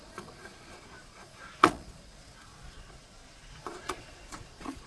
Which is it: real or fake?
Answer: fake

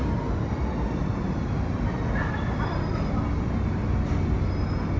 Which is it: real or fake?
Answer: real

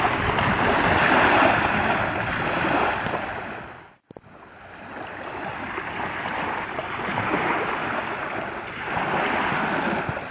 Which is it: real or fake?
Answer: real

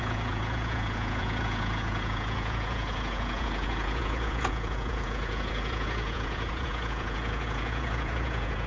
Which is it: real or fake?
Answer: fake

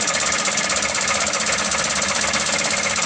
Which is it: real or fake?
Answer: real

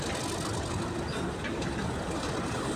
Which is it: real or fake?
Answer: real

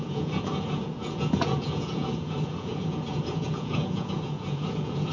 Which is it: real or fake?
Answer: fake